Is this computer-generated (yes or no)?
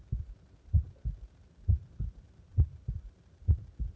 no